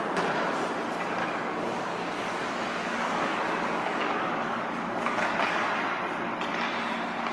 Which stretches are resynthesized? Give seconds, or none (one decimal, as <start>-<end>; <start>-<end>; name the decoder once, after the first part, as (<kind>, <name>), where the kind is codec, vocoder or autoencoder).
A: 1.2-5.6 (codec, DAC)